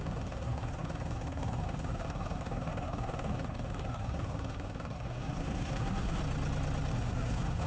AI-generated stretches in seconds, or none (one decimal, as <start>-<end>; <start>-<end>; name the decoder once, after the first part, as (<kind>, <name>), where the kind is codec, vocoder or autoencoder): 0.0-6.2 (codec, SNAC); 6.9-7.7